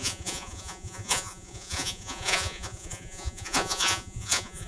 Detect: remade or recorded remade